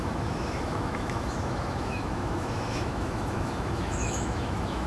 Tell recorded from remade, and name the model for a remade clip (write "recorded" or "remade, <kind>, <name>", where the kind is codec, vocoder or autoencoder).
remade, autoencoder, DAC-VAE